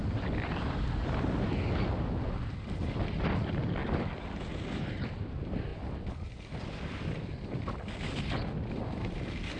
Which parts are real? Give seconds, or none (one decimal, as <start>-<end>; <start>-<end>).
0.0-9.6